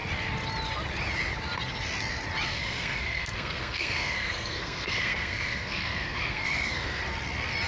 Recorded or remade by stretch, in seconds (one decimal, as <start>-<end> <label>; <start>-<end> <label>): 0.0-2.5 recorded; 2.5-7.0 remade; 7.0-7.7 recorded